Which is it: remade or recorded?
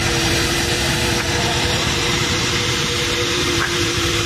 remade